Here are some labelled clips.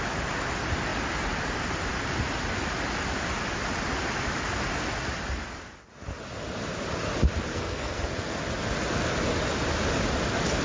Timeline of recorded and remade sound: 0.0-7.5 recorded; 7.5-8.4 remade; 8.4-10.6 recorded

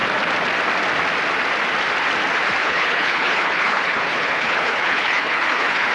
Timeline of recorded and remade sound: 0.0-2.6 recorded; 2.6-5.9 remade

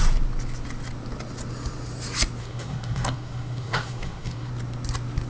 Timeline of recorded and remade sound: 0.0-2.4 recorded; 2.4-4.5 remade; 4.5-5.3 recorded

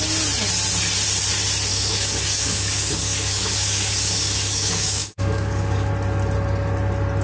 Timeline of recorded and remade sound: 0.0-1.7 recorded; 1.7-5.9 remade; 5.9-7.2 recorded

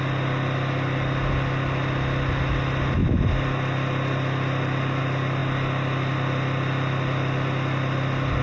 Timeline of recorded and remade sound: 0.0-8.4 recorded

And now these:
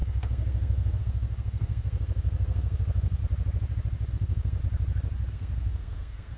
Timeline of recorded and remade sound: 0.0-3.2 remade; 3.2-4.1 recorded; 4.1-4.6 remade; 4.6-5.3 recorded; 5.3-6.4 remade